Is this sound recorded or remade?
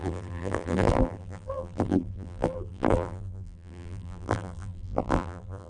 remade